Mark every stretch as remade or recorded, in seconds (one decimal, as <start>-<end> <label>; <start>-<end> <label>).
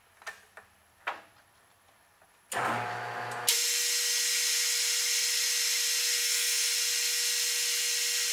0.0-6.0 recorded; 6.0-6.7 remade; 6.7-8.3 recorded